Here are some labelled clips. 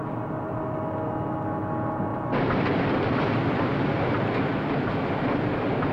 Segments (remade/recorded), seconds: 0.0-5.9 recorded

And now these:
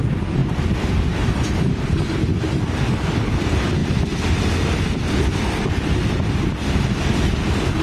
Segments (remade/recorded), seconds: 0.0-7.8 recorded

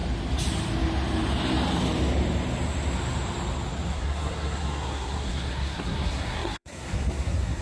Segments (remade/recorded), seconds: 0.0-3.9 recorded; 3.9-7.6 remade

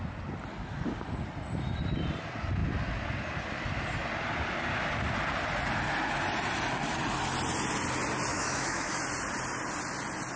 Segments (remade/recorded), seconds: 0.0-8.3 recorded; 8.3-9.0 remade; 9.0-10.4 recorded

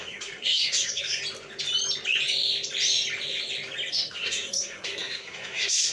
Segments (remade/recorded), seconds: 0.0-1.2 remade; 1.2-3.9 recorded; 3.9-5.9 remade

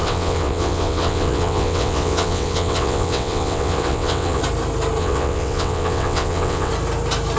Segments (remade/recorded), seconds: 0.0-4.4 remade; 4.4-5.0 recorded; 5.0-6.7 remade; 6.7-7.4 recorded